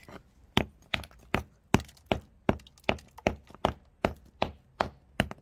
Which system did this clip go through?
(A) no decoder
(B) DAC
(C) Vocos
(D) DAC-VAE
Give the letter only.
A